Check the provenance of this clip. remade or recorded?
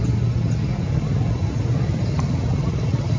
recorded